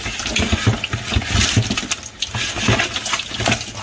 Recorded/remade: recorded